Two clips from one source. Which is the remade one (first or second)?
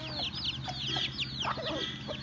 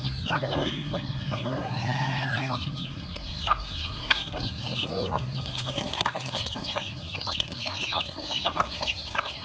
second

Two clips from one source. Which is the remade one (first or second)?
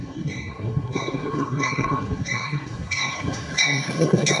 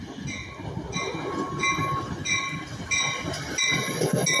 first